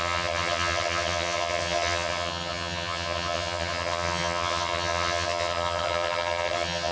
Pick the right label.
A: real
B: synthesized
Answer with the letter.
B